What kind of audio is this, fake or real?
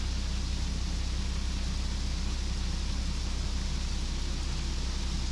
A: real